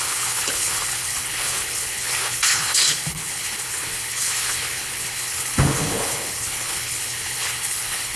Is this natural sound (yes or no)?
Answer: no